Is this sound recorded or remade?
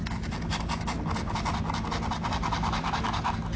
recorded